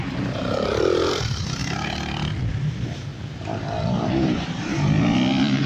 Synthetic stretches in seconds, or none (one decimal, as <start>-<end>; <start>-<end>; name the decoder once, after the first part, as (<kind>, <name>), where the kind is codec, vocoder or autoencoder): 0.0-1.6 (vocoder, BigVGAN v2); 2.5-3.1; 4.1-4.7